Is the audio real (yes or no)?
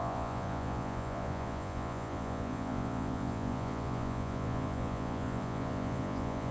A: no